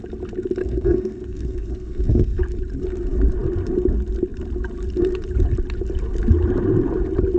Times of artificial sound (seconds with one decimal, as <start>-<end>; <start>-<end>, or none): 0.6-2.4